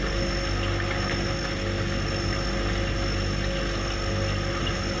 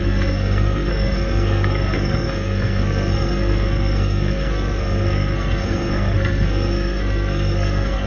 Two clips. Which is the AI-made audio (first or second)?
second